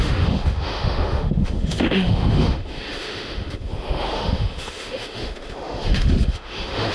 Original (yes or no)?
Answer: no